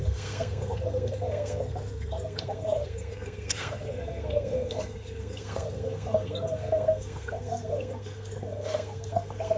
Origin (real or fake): fake